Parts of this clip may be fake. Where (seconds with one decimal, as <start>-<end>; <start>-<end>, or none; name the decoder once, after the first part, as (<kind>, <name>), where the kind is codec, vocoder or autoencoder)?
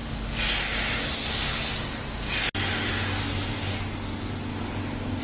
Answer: 4.5-5.2 (codec, DAC)